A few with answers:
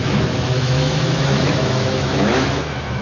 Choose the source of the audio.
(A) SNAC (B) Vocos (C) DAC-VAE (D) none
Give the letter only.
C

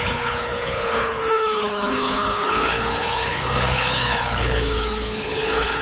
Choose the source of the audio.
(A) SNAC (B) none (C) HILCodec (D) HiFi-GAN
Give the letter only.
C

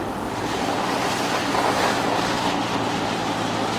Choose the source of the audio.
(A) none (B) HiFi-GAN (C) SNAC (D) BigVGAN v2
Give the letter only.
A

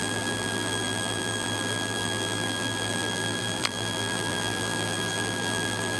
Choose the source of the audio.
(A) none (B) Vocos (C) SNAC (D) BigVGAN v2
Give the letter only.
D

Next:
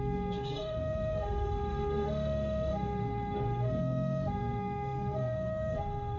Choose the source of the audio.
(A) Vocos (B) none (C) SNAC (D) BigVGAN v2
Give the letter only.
C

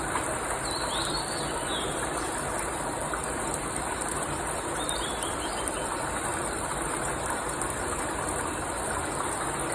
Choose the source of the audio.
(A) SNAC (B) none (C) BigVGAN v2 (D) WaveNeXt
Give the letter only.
C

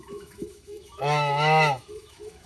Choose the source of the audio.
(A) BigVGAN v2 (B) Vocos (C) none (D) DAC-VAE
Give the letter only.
D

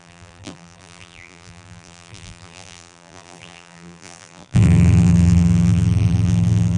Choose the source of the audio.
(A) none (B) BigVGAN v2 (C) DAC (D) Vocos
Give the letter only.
B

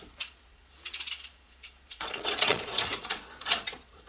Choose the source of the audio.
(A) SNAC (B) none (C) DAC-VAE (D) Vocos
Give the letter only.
D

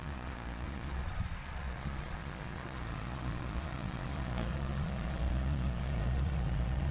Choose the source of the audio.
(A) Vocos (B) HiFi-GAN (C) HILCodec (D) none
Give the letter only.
A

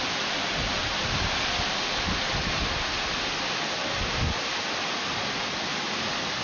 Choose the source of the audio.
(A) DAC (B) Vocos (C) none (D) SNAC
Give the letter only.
C